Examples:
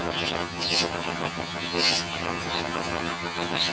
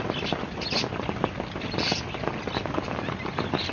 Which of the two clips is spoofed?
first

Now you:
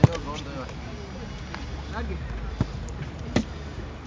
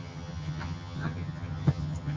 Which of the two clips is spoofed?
second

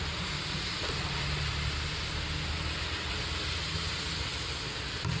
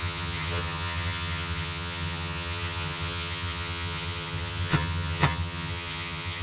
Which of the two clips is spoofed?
second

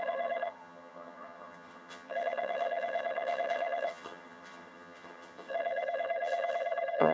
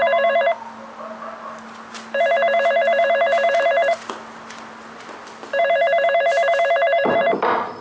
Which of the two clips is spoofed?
first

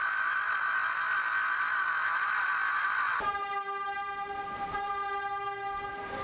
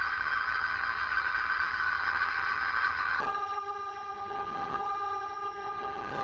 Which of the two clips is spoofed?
second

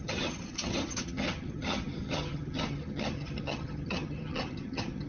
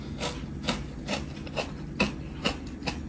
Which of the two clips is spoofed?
first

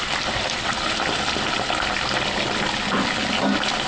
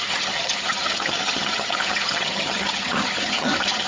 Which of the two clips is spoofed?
second